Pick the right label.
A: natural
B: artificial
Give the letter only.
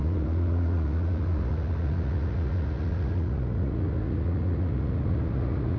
B